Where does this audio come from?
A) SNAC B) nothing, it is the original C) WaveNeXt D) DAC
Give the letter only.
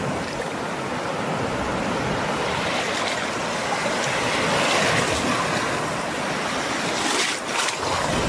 B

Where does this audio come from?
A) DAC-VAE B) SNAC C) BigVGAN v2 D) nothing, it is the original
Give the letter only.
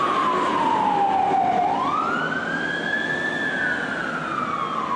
D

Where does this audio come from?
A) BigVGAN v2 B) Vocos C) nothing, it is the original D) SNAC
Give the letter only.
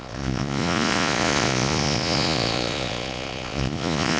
B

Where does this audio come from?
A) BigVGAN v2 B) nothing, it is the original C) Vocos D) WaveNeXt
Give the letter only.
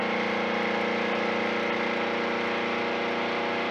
B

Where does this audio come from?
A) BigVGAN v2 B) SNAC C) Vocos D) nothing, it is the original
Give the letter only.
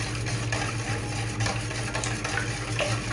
D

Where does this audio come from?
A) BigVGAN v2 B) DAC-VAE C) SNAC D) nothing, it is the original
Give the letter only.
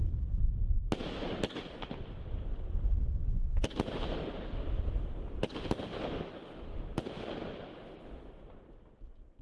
D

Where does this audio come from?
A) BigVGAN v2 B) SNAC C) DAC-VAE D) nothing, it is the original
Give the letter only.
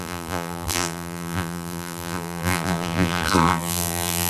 A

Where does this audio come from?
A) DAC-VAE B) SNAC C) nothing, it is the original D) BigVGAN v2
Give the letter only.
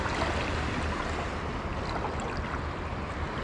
C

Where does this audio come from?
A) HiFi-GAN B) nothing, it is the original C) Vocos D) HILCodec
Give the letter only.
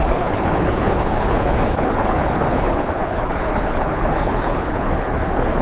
D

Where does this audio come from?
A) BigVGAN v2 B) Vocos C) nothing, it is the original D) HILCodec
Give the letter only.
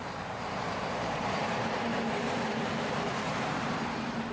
A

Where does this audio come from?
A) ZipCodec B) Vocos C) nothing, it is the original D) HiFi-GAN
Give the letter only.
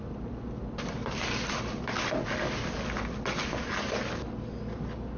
C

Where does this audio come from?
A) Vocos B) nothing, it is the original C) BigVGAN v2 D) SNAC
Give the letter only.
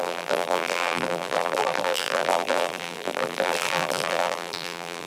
C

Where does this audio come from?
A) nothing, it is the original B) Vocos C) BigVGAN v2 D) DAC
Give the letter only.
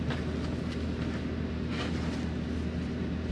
A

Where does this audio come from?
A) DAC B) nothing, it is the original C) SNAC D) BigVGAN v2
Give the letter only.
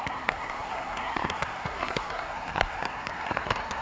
C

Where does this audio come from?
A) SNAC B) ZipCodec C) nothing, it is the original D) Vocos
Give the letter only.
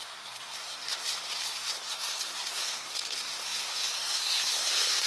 A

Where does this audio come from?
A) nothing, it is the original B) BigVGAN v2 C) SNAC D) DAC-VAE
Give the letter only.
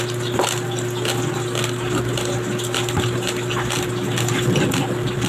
A